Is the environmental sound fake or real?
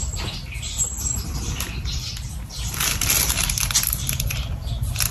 real